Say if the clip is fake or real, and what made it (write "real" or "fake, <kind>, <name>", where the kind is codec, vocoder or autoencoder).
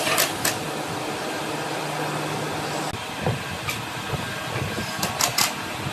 real